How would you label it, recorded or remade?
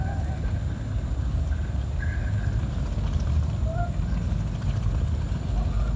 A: recorded